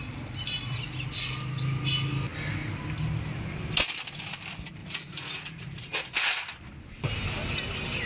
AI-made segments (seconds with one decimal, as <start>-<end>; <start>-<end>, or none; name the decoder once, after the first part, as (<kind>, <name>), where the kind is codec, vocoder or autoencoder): 4.8-6.0 (vocoder, Vocos)